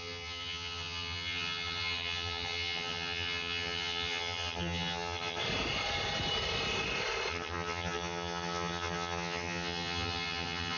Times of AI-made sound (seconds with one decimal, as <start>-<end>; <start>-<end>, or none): 0.0-5.4; 7.3-10.8